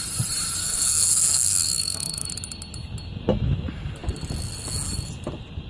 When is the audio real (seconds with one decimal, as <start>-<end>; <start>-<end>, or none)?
0.0-0.6; 2.3-5.7